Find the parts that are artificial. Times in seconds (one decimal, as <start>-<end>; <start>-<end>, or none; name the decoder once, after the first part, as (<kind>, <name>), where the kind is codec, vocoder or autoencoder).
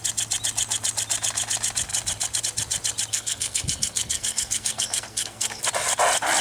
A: 3.1-5.6 (codec, SNAC)